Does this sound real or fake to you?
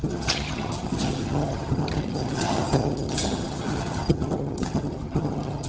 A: fake